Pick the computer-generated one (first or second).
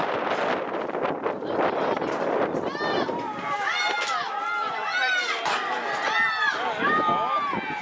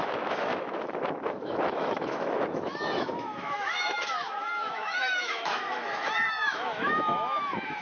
second